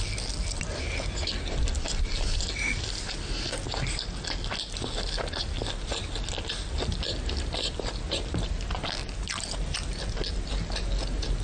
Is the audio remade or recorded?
recorded